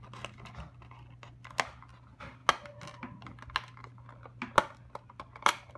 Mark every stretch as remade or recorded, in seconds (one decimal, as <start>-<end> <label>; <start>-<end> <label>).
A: 0.0-5.8 recorded